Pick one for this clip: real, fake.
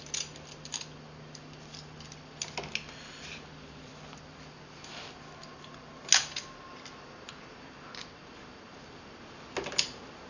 real